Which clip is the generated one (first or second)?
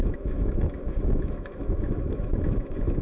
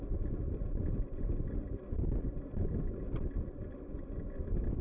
first